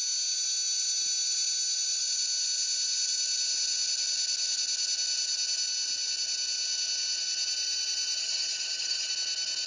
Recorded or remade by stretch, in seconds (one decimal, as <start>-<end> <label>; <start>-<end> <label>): 0.0-8.2 recorded; 8.2-9.1 remade; 9.1-9.7 recorded